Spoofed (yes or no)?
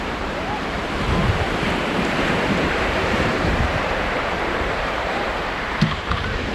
yes